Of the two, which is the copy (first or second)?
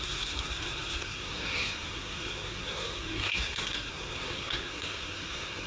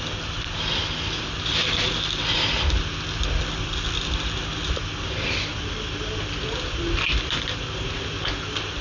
first